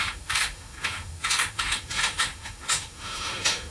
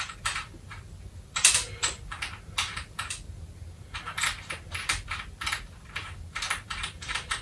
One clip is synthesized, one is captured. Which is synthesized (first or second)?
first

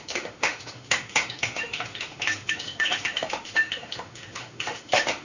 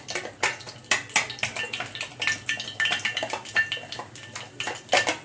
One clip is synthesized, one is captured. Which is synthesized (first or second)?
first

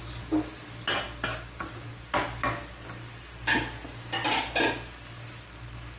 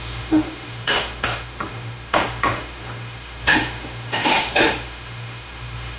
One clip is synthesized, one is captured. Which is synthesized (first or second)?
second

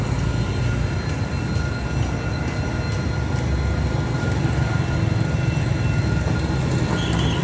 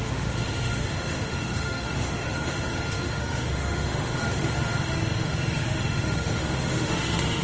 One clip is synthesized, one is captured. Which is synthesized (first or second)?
second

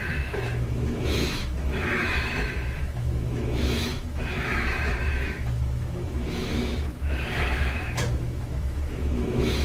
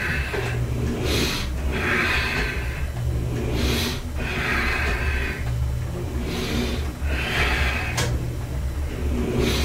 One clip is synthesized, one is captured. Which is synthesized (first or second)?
first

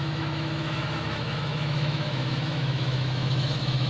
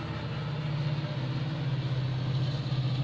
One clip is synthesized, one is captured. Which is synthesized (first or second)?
first